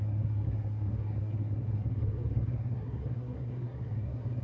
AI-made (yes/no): yes